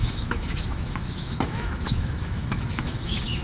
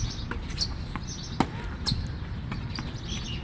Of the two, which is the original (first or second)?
second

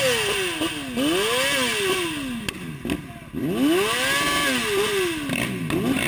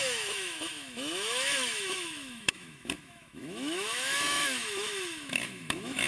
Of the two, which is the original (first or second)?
first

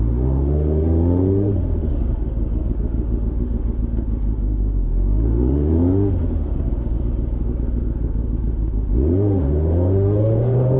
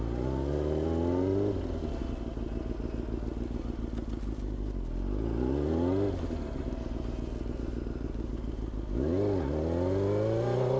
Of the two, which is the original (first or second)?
second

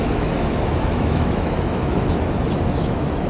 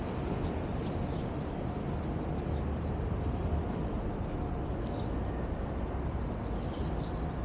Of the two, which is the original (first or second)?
second